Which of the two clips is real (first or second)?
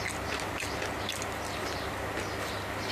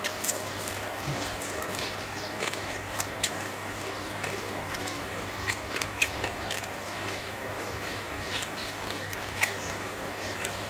first